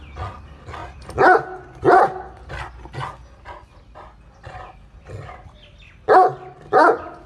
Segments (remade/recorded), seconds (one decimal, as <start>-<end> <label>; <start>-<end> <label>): 0.0-7.3 recorded